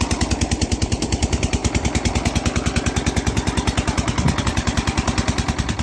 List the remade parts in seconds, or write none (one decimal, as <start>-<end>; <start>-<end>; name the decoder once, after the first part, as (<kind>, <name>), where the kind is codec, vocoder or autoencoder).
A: 0.0-1.6 (vocoder, BigVGAN v2); 4.4-5.8